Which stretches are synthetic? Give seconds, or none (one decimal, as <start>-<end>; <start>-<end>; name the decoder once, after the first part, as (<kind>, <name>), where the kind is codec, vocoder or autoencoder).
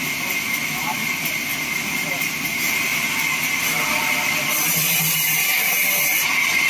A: 0.0-1.5 (vocoder, BigVGAN v2); 2.1-2.9; 4.0-6.7